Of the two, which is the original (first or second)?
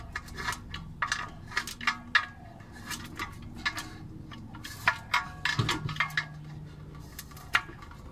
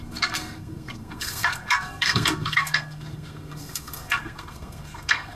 first